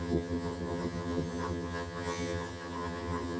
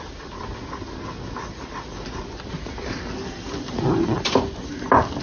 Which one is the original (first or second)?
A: second